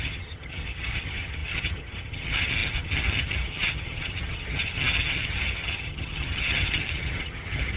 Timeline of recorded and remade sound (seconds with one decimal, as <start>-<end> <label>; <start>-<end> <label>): 0.0-7.8 remade